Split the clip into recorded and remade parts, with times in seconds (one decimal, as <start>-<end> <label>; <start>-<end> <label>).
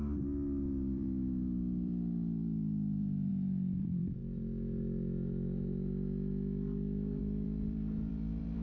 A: 0.0-3.3 remade; 3.3-3.8 recorded; 3.8-4.2 remade; 4.2-7.2 recorded; 7.2-8.6 remade